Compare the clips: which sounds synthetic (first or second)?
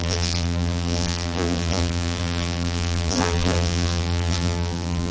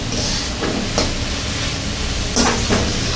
first